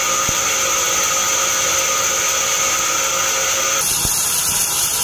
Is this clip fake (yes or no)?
no